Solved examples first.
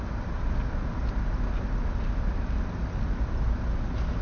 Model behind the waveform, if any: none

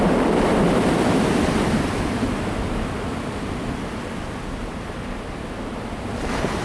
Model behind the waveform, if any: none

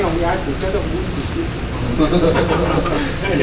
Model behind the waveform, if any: none